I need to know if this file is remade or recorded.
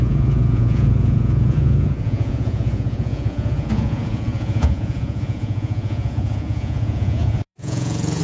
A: remade